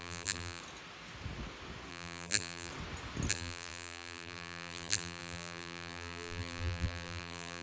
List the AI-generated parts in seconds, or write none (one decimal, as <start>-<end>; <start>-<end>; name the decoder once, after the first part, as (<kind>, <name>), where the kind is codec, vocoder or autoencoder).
0.0-0.6 (vocoder, BigVGAN v2); 1.9-2.7; 3.3-7.6